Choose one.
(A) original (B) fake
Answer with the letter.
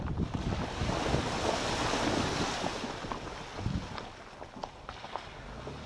A